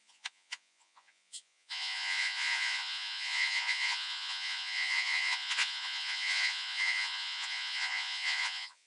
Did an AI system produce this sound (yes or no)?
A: yes